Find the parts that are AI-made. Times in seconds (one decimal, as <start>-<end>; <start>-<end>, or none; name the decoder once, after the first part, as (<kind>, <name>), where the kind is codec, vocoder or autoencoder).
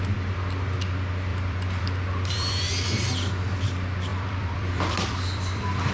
1.3-3.0 (vocoder, BigVGAN v2); 4.1-5.9